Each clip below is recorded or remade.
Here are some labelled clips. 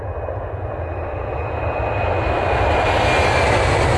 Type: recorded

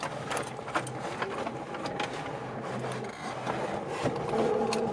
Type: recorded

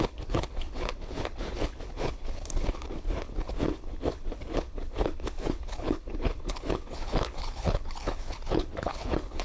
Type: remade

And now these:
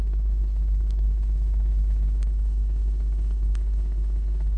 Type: remade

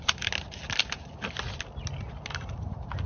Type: recorded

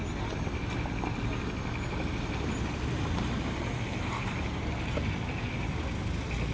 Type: recorded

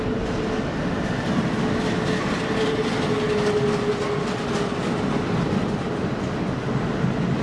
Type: recorded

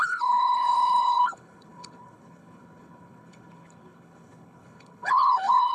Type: remade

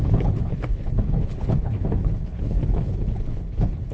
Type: remade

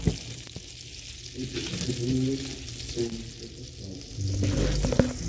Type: recorded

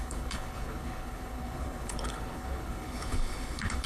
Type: remade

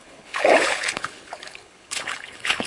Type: remade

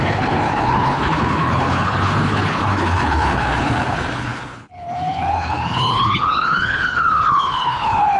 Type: remade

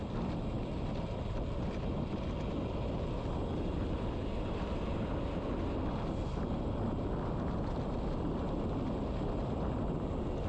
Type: recorded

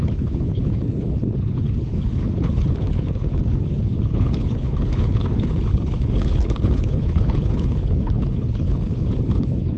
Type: remade